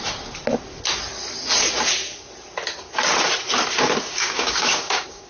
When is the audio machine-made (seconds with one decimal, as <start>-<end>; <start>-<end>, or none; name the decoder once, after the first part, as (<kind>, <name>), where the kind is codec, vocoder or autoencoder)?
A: 4.1-5.3 (codec, DAC)